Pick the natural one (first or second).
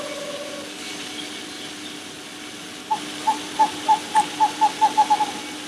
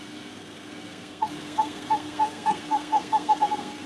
first